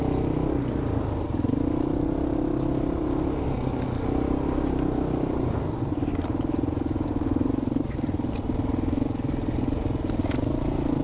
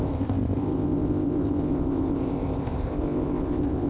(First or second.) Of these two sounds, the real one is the first